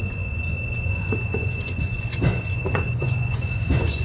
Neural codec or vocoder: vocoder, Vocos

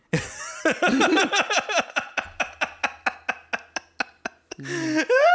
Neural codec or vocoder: none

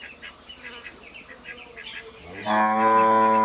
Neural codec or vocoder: none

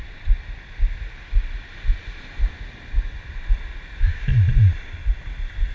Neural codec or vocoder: none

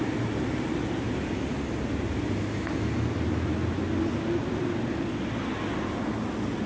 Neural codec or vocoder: none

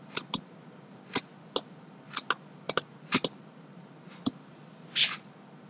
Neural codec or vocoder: none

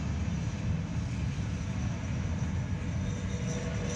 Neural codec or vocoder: none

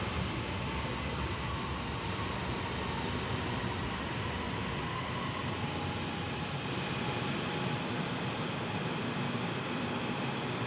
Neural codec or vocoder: none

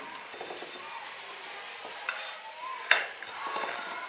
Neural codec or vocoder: none